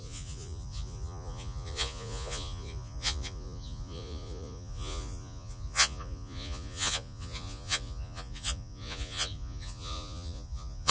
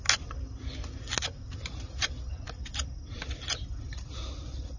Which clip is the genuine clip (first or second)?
second